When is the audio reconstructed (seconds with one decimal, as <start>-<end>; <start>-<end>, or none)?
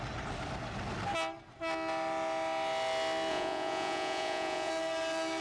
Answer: 3.3-4.7